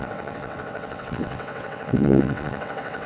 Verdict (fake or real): fake